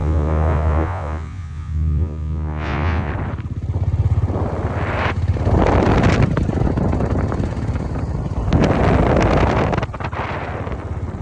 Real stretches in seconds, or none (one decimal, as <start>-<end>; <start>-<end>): 3.1-11.2